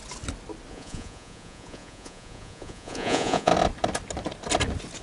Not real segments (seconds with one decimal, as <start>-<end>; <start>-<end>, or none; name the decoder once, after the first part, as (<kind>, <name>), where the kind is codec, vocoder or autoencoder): 0.7-3.5 (vocoder, Vocos)